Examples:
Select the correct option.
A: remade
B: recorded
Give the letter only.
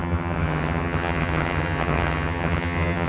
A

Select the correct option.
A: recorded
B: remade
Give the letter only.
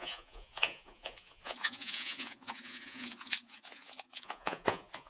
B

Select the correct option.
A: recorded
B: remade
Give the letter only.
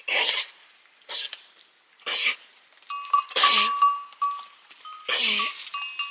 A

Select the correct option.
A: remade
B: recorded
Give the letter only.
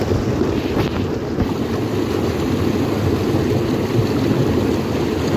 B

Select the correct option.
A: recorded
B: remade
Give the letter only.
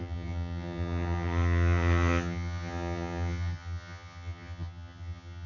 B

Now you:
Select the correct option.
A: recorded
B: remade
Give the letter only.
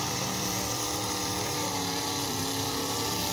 B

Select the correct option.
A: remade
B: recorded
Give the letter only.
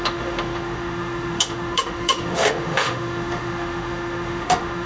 A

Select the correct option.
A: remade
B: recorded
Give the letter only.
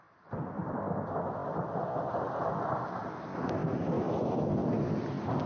B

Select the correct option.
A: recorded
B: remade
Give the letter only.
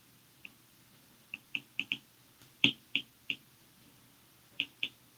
B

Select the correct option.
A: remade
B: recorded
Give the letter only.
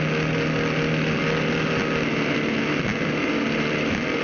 B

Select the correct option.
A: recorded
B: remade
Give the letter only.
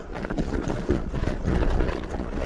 B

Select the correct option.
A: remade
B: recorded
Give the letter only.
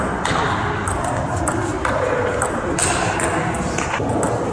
B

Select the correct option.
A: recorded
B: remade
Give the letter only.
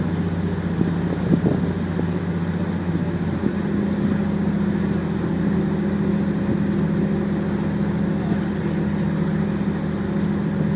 A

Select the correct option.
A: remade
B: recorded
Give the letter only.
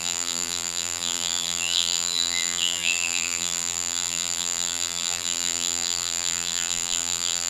A